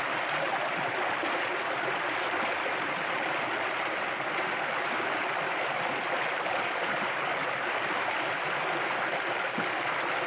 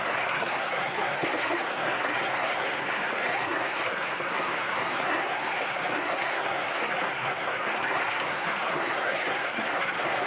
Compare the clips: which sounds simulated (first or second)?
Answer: second